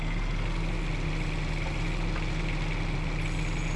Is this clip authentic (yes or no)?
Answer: yes